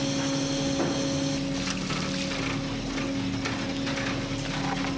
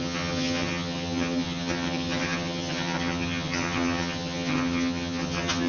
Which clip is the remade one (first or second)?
second